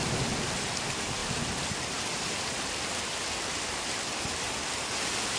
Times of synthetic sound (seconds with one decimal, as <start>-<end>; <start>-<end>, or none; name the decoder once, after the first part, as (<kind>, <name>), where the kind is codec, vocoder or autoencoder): none